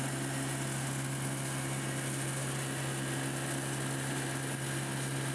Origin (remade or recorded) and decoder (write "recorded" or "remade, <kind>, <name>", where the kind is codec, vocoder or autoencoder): recorded